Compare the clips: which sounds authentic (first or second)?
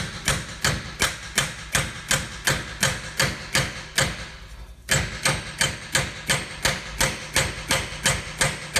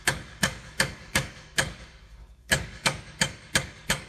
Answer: first